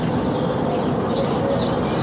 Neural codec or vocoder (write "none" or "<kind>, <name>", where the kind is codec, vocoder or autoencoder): none